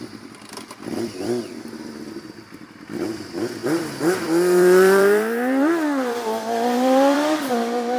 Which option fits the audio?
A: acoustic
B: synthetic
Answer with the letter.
B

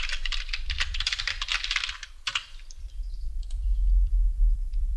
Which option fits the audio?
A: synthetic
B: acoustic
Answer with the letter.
A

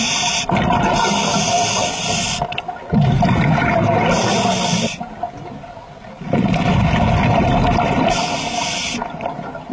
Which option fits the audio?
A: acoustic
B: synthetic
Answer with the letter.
A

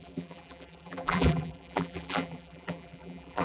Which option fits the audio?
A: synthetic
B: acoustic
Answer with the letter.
A